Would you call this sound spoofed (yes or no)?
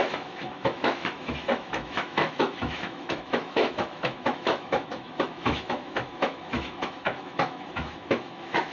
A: yes